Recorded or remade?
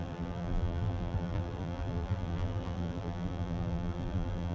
remade